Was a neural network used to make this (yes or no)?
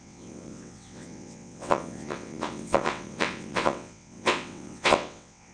yes